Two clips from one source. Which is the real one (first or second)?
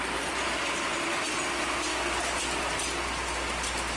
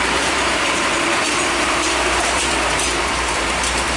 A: first